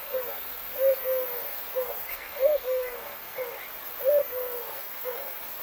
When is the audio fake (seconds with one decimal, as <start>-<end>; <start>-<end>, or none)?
0.0-3.4; 4.2-5.6